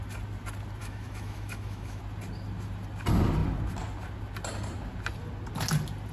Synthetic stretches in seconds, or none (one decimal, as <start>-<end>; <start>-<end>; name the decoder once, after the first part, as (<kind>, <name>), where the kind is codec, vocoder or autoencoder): 0.8-2.0 (autoencoder, DAC-VAE)